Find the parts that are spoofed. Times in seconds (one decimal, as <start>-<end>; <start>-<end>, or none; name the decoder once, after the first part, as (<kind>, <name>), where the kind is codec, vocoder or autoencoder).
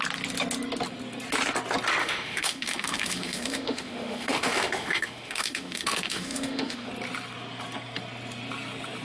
2.0-6.9 (autoencoder, DAC-VAE)